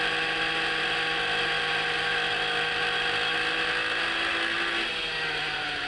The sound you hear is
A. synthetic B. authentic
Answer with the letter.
B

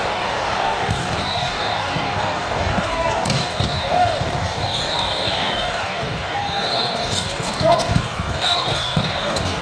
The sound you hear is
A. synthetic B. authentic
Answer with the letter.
A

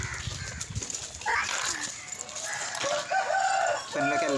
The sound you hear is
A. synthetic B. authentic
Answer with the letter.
B